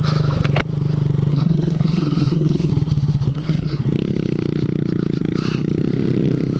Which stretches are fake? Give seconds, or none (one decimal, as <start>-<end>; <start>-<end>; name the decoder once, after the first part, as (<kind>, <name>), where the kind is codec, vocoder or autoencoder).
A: 1.3-2.7 (codec, SNAC); 3.3-3.8